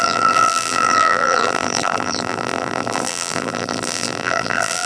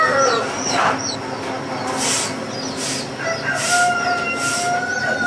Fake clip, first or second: first